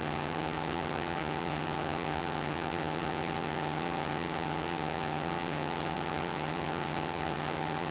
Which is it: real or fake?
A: fake